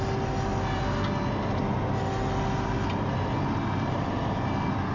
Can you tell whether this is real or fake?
real